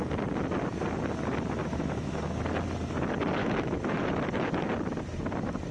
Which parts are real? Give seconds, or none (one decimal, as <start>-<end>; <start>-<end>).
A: 0.0-1.6; 2.4-3.4; 4.1-5.7